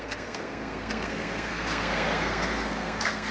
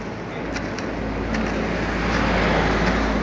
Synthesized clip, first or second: first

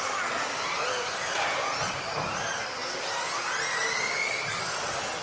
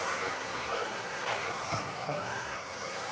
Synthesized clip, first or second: second